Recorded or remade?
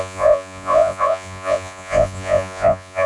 remade